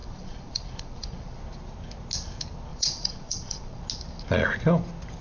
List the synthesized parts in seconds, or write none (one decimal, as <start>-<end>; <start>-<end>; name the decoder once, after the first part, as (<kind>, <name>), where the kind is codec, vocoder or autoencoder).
0.0-1.4 (vocoder, Vocos); 2.7-3.8